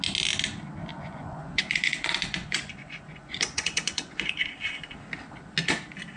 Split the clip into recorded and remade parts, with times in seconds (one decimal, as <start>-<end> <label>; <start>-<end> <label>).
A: 0.0-0.9 recorded; 0.9-4.3 remade; 4.3-6.2 recorded